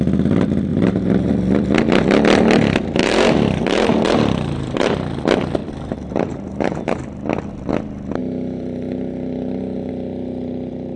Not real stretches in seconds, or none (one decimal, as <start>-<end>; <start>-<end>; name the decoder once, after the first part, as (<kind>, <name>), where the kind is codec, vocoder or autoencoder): 0.7-1.3 (vocoder, BigVGAN v2); 3.0-4.9; 5.6-7.0; 8.2-9.9